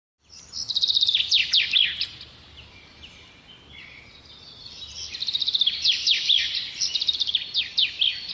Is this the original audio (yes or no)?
yes